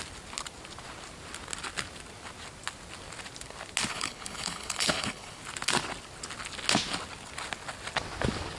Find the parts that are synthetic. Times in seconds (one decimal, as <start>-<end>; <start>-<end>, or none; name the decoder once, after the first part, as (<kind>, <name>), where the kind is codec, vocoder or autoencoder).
3.9-5.4 (codec, HILCodec)